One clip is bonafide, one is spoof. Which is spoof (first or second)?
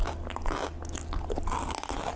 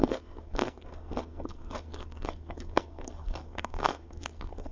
second